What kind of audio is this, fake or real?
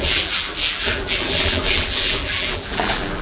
fake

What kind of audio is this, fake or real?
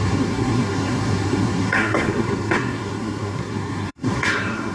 fake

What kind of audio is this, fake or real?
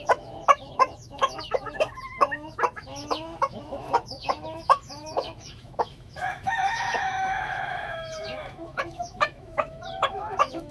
fake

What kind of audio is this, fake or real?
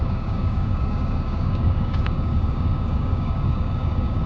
fake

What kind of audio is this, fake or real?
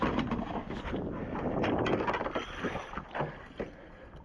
real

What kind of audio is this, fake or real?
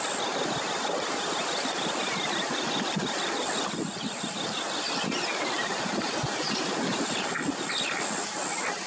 real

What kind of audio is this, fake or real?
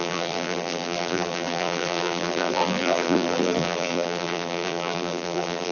fake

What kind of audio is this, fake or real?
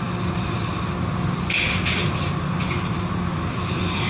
real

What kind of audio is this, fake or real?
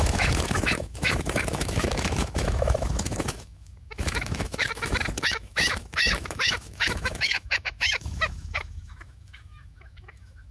fake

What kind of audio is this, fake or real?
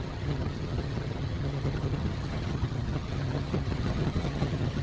fake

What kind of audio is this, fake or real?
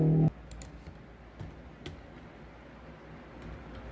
real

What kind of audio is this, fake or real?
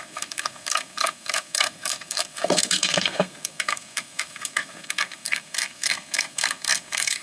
fake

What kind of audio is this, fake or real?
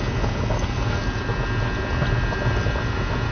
real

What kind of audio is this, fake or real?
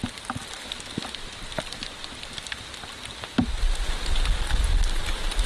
real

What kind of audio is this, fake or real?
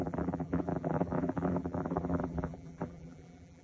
fake